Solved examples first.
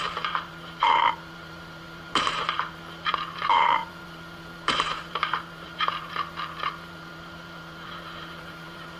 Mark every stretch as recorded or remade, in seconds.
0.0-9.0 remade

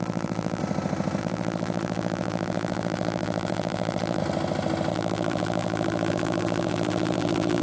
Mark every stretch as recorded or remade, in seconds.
0.0-0.6 remade; 0.6-1.2 recorded; 1.2-4.2 remade; 4.2-4.9 recorded; 4.9-7.6 remade